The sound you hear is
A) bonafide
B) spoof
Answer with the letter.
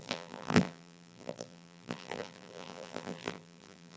B